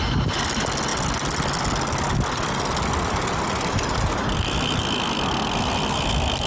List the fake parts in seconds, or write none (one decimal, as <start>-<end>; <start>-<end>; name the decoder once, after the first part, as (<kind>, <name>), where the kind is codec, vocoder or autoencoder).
none

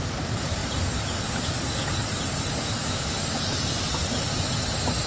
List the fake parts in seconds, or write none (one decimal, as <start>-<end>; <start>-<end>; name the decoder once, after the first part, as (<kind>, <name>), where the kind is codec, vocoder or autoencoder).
none